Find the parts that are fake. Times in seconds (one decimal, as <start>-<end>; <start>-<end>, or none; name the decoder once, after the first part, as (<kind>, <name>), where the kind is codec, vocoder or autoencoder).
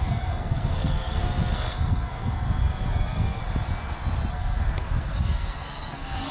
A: 0.0-3.4 (codec, SNAC); 4.3-6.3